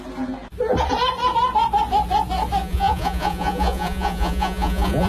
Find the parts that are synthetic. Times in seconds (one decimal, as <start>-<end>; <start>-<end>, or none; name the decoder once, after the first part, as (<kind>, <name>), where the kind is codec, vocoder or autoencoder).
2.6-5.1 (vocoder, Vocos)